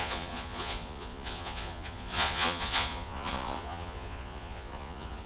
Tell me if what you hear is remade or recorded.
remade